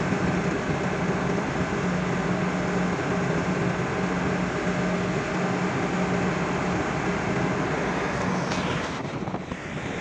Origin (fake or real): real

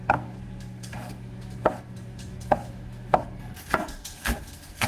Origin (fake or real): fake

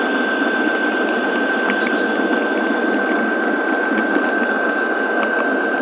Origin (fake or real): real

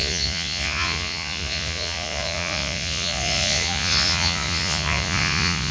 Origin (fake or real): fake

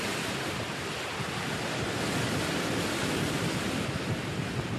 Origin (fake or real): real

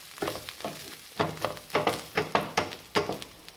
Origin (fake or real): real